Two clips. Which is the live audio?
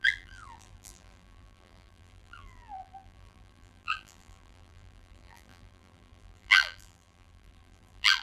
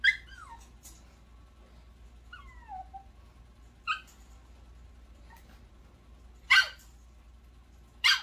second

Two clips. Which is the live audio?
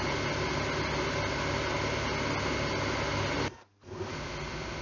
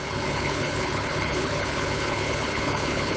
first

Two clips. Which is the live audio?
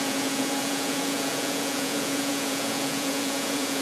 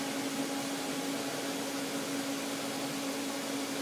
second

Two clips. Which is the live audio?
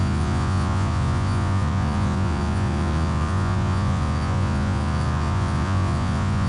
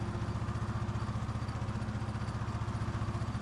second